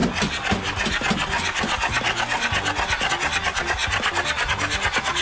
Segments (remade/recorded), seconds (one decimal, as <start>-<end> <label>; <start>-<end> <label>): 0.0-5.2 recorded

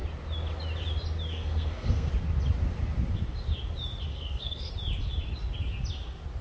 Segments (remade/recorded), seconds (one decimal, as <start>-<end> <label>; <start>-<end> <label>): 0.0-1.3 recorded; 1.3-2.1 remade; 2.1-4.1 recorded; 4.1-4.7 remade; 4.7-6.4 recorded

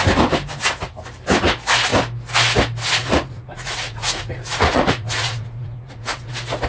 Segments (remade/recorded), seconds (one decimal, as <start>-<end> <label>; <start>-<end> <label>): 0.0-3.0 recorded; 3.0-6.3 remade; 6.3-6.7 recorded